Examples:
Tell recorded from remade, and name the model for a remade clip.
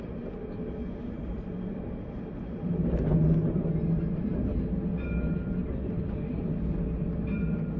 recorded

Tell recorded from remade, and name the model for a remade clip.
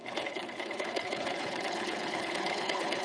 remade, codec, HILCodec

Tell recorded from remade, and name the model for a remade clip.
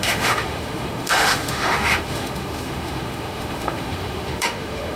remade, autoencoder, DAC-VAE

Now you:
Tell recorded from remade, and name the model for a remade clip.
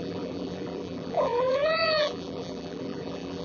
remade, vocoder, BigVGAN v2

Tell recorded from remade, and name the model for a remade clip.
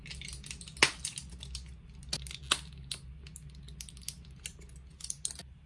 recorded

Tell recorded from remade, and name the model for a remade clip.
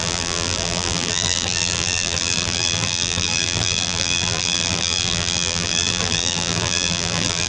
remade, vocoder, BigVGAN v2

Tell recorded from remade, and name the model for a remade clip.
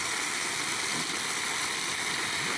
recorded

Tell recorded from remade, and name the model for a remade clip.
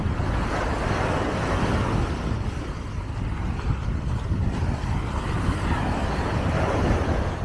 recorded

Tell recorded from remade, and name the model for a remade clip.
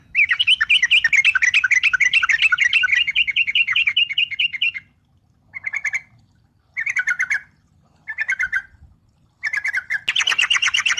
recorded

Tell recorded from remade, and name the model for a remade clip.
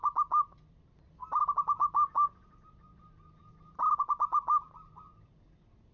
recorded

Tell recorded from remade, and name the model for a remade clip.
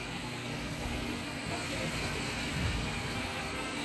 remade, codec, SNAC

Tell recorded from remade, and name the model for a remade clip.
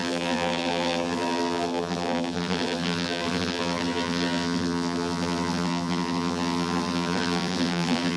remade, vocoder, BigVGAN v2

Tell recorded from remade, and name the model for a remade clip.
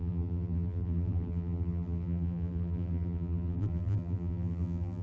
remade, vocoder, BigVGAN v2